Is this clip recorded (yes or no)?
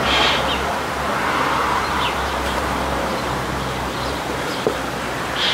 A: no